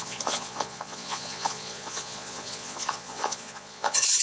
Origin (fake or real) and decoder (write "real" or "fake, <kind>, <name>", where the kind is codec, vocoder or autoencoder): fake, vocoder, Vocos